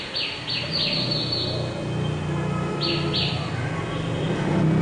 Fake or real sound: real